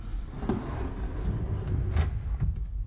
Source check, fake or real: real